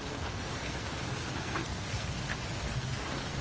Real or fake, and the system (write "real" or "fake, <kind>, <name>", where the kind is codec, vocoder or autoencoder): fake, codec, SNAC